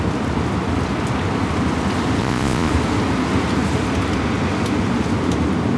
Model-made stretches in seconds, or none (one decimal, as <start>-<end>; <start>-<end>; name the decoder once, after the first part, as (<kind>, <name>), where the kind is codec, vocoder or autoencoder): 2.2-2.7 (vocoder, Vocos)